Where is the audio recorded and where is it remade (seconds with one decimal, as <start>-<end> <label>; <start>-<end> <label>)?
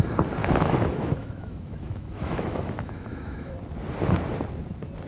0.0-0.4 recorded; 0.4-3.5 remade; 3.5-5.1 recorded